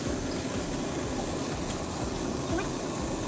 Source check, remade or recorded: recorded